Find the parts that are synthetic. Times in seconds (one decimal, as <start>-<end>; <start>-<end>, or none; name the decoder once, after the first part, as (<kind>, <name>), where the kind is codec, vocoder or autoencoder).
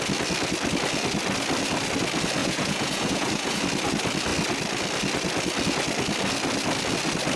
2.4-3.6 (vocoder, Vocos)